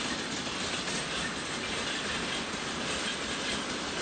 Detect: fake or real real